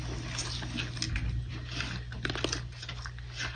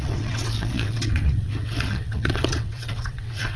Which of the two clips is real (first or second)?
first